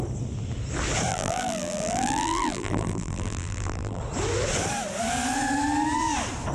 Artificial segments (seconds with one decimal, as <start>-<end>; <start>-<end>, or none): 1.1-4.0